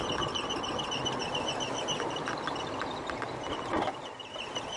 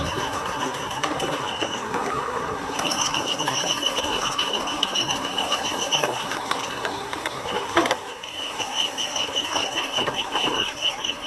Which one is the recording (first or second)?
first